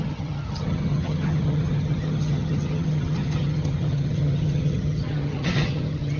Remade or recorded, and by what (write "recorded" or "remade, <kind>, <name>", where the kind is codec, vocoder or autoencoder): remade, vocoder, HiFi-GAN